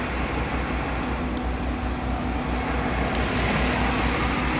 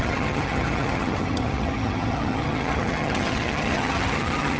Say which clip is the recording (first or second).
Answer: first